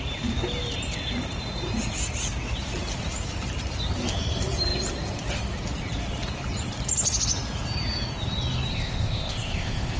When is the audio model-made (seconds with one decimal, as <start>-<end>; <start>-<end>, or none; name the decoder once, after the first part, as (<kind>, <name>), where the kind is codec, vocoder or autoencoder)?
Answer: 8.7-10.0 (codec, ZipCodec)